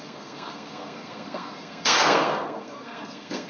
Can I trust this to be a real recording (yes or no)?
no